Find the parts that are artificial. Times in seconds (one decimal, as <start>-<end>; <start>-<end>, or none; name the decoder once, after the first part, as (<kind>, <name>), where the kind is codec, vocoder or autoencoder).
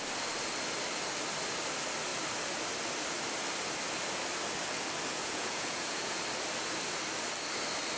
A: 5.1-6.2 (vocoder, Vocos)